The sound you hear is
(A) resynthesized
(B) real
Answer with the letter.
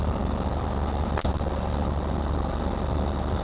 B